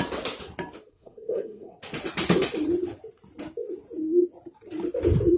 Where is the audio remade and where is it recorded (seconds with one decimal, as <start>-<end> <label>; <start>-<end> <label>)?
0.0-0.9 recorded; 0.9-1.8 remade; 1.8-5.4 recorded